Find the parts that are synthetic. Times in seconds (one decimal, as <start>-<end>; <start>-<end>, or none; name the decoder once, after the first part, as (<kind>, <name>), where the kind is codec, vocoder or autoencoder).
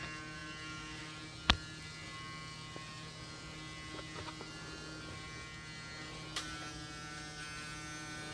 none